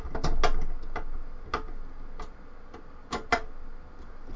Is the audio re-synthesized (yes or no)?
no